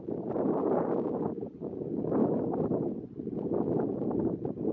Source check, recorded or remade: recorded